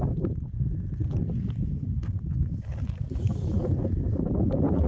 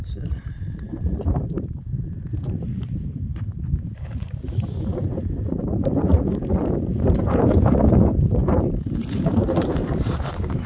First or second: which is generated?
second